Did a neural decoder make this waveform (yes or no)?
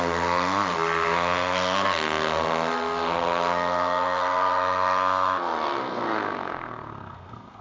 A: yes